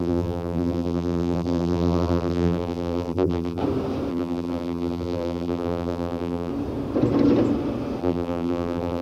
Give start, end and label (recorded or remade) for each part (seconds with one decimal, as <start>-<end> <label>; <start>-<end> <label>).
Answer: 0.0-3.6 remade; 3.6-4.1 recorded; 4.1-6.5 remade; 6.5-8.0 recorded; 8.0-9.0 remade